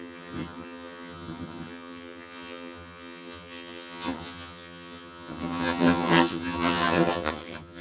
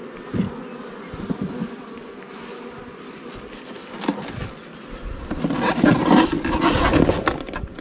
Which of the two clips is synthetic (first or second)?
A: first